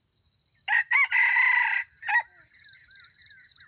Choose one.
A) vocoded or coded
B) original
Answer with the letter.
B